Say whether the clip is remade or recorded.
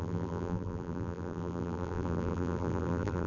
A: remade